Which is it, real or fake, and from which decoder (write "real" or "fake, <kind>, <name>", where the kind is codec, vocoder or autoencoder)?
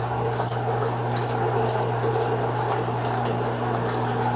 real